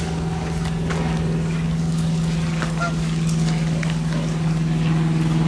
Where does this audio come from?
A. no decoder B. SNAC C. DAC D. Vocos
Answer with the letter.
C